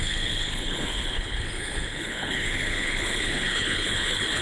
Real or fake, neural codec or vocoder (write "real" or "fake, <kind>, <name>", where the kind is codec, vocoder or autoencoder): fake, codec, HILCodec